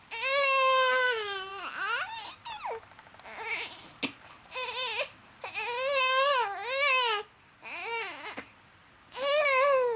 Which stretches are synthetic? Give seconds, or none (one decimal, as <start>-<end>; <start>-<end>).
none